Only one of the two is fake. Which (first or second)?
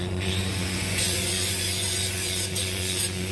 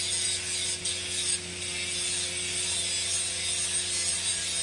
first